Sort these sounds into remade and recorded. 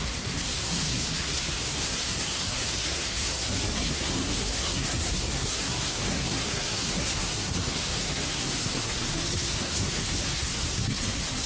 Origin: remade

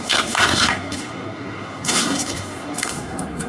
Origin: remade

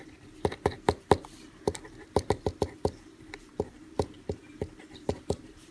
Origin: remade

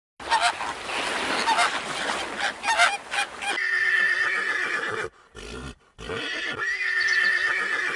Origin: recorded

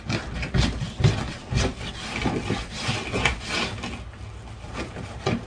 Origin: recorded